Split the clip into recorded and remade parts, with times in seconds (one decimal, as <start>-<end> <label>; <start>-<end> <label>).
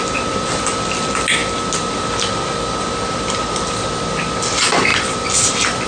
0.0-4.9 recorded; 4.9-5.9 remade